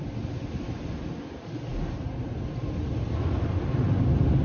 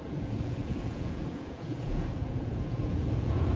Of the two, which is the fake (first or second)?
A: second